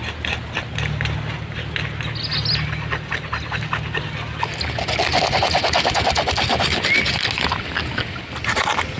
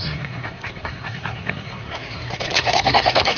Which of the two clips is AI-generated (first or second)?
second